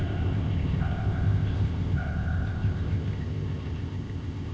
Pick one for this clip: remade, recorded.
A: remade